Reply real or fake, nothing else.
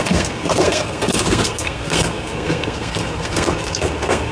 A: fake